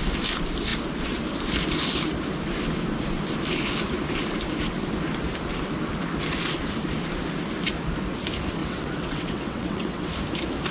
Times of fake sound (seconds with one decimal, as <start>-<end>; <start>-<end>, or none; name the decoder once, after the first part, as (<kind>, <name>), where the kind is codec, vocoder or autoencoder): 8.6-10.1 (vocoder, WaveNeXt)